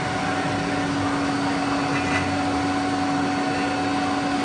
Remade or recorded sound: recorded